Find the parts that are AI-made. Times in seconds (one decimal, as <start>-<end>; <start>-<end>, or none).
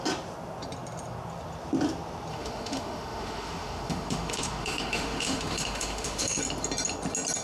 2.3-6.4